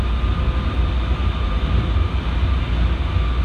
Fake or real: real